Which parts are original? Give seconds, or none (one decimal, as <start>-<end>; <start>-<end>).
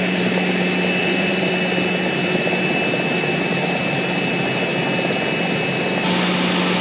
0.0-1.0; 1.5-6.8